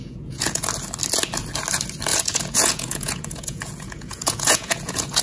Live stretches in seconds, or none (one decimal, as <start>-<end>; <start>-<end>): 0.6-2.1